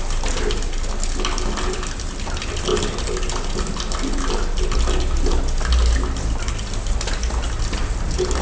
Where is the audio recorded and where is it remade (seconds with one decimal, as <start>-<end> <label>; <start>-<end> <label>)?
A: 0.0-8.4 recorded